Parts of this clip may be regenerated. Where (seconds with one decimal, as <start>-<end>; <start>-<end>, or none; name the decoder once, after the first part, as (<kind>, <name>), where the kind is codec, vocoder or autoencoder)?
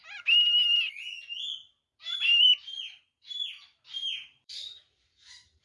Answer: 3.9-5.6 (vocoder, BigVGAN v2)